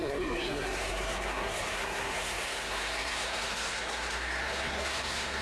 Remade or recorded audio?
remade